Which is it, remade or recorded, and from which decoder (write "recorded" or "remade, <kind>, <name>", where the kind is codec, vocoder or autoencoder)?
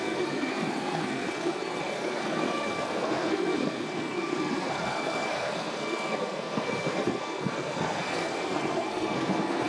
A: remade, codec, SNAC